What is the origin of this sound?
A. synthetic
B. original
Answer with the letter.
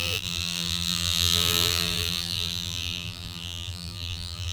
A